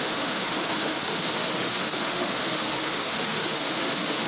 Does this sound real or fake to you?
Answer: fake